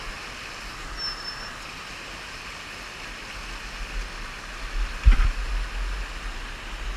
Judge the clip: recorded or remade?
recorded